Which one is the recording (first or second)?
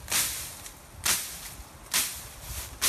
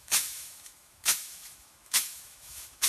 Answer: first